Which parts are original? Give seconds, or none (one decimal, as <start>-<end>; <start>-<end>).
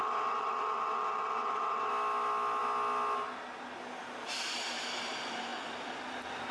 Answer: 1.9-6.5